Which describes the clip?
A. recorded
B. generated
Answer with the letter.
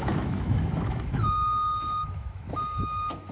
B